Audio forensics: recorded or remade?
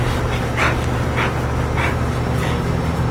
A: recorded